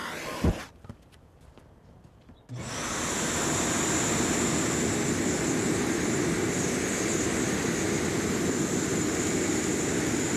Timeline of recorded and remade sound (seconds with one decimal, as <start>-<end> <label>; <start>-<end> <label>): 0.0-10.4 recorded